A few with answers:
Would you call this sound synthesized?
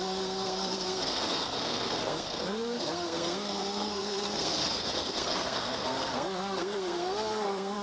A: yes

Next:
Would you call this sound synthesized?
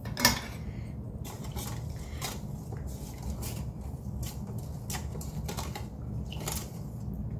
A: no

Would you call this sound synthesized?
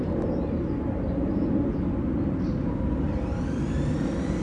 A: no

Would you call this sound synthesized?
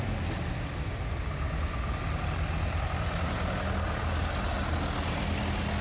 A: no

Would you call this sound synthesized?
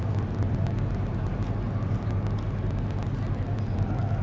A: no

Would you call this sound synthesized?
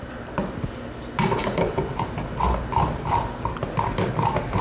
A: no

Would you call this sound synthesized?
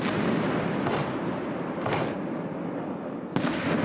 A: no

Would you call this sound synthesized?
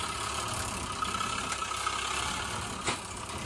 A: no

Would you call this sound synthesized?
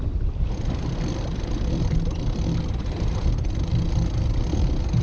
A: no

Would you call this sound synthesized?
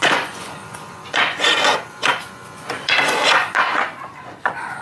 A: yes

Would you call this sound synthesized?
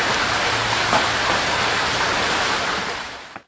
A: no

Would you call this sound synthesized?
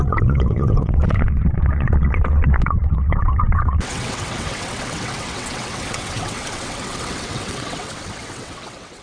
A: yes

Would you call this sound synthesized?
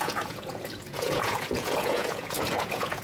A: yes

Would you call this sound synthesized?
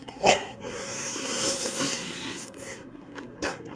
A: yes